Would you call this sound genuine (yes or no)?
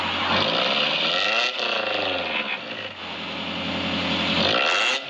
yes